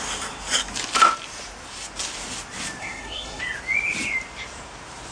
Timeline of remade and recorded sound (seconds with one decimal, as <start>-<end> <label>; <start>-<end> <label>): 0.0-2.8 recorded; 2.8-3.4 remade; 3.4-5.1 recorded

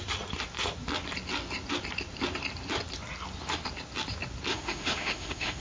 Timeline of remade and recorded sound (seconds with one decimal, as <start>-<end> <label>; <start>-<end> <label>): 0.0-4.5 recorded; 4.5-5.6 remade

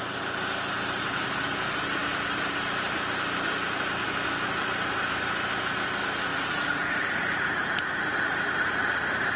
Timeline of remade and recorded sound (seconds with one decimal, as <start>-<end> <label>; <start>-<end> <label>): 0.0-6.3 recorded; 6.3-9.4 remade

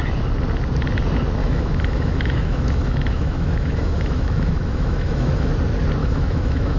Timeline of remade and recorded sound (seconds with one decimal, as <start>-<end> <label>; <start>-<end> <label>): 0.0-1.4 recorded; 1.4-5.5 remade; 5.5-6.0 recorded; 6.0-6.8 remade